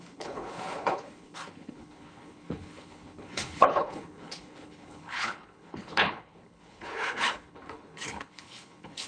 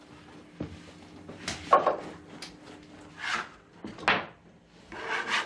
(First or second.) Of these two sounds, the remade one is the first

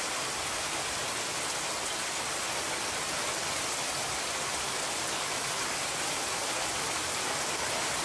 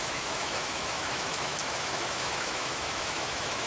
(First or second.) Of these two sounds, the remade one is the second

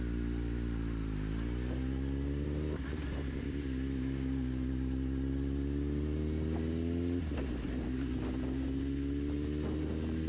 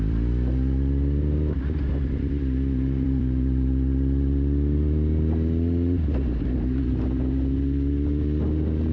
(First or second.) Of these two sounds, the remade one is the second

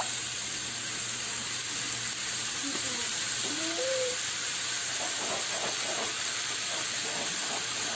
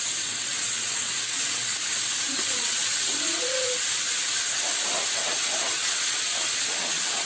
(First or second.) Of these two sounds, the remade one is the second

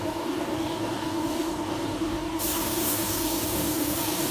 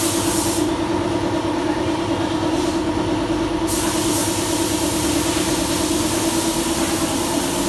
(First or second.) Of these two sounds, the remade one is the first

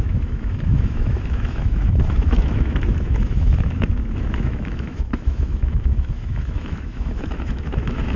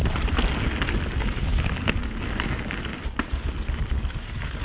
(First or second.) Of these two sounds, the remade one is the first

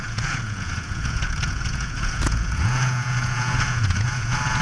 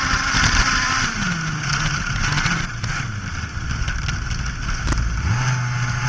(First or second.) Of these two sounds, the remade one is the first